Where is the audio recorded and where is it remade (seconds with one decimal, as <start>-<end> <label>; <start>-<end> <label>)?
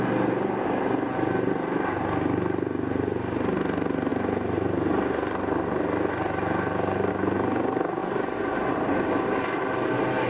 0.0-8.0 recorded; 8.0-8.9 remade; 8.9-10.3 recorded